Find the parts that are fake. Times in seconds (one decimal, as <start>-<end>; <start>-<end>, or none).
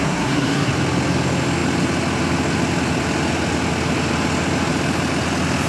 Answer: 0.0-0.7